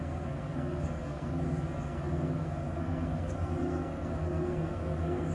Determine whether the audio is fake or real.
fake